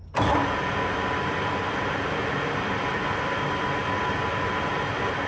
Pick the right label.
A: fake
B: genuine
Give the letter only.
B